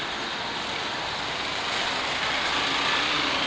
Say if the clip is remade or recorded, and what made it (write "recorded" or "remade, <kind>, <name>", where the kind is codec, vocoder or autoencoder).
recorded